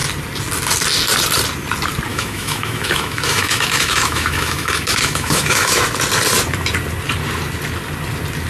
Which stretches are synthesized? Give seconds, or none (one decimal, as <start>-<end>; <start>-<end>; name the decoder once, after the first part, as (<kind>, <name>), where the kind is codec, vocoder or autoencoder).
2.1-5.8 (autoencoder, DAC-VAE)